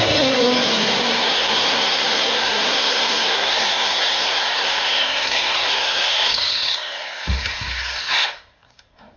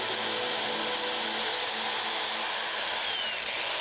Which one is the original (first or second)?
second